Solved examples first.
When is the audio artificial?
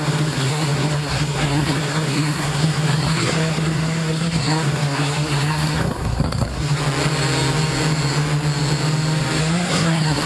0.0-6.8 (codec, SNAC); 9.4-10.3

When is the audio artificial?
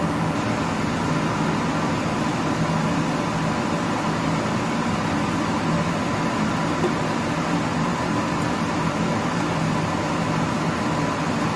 none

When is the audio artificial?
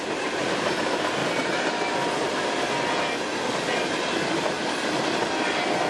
none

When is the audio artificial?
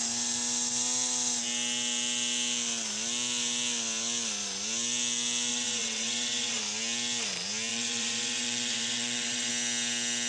5.5-6.6 (vocoder, WaveNeXt); 7.7-9.5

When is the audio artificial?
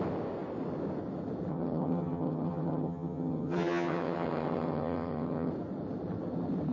1.5-5.5 (vocoder, HiFi-GAN)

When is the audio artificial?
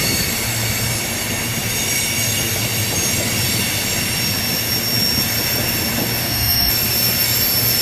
6.2-6.7 (autoencoder, DAC-VAE)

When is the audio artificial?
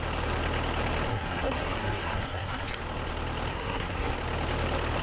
1.1-2.8 (codec, SNAC); 3.5-4.1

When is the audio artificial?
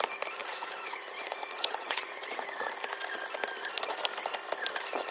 0.4-2.7 (vocoder, Vocos)